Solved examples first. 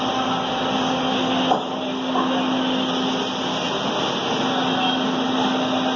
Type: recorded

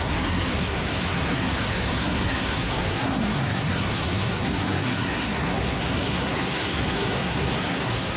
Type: remade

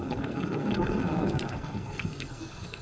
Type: remade